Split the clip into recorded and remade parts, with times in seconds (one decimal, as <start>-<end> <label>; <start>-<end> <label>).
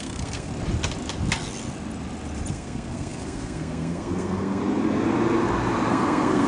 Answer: 0.0-0.5 remade; 0.5-2.5 recorded; 2.5-4.6 remade; 4.6-5.9 recorded; 5.9-6.5 remade